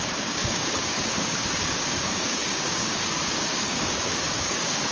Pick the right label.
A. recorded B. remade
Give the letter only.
B